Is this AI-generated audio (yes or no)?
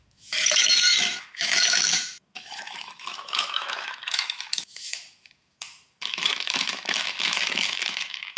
yes